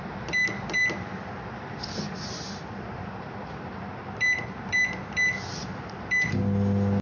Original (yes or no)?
yes